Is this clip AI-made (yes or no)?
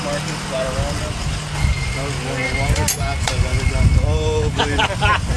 no